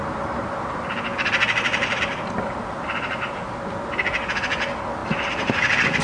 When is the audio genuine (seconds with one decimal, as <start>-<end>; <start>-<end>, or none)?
0.0-6.0